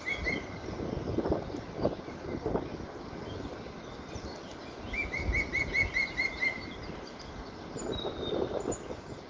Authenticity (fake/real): real